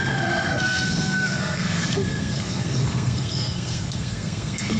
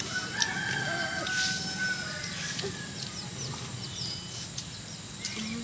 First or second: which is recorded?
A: second